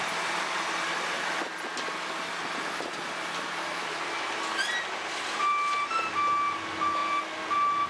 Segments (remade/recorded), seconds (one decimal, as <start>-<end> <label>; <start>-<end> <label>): 0.0-7.9 recorded